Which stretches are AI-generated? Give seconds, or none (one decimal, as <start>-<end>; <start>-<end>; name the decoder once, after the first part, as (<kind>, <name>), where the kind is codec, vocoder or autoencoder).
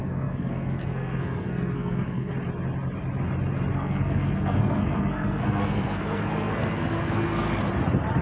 0.0-2.3 (codec, SNAC); 3.7-7.6